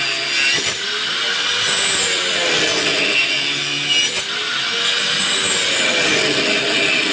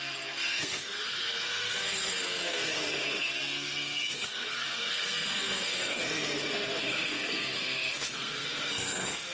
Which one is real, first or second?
first